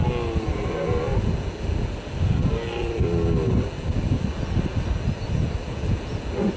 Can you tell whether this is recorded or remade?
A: recorded